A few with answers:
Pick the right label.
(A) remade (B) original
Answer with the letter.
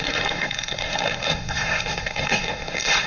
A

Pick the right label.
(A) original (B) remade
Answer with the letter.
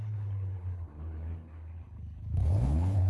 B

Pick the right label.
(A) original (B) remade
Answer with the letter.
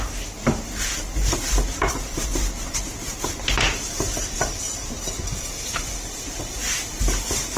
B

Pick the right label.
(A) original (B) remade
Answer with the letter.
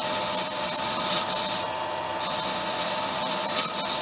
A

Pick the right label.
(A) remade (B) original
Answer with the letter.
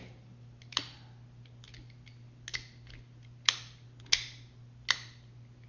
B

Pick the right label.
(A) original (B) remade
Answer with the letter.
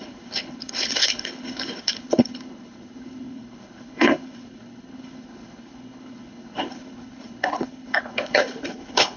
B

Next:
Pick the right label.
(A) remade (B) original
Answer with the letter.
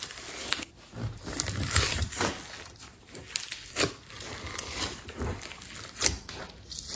B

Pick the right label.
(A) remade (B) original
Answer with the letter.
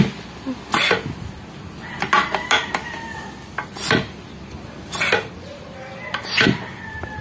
B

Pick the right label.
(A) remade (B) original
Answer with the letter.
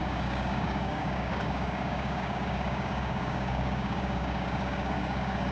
A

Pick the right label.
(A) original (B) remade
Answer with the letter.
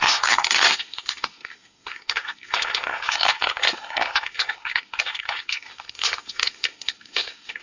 B